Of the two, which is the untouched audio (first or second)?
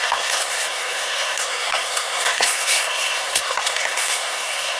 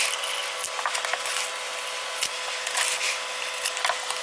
second